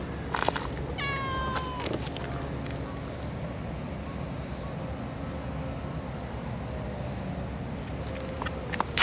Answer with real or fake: real